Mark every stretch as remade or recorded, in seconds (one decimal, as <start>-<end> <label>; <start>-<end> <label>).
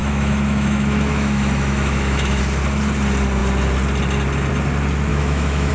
0.0-2.4 remade; 2.4-5.1 recorded; 5.1-5.7 remade